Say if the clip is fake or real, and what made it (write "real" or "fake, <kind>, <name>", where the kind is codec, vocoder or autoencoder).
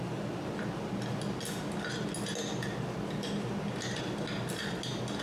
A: real